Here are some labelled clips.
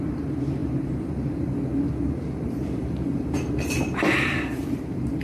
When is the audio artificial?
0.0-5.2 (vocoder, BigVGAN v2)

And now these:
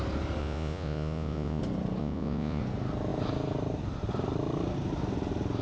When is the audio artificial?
0.4-1.6 (vocoder, Vocos); 2.0-2.6

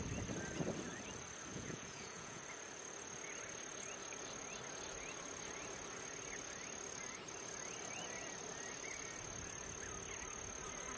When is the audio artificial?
1.5-2.4 (vocoder, Vocos)